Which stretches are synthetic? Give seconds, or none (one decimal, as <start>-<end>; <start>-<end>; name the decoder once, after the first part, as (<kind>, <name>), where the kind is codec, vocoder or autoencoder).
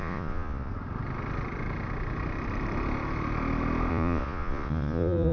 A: 0.0-0.7 (vocoder, Vocos); 3.9-5.3